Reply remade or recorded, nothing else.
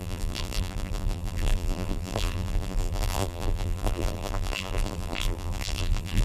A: remade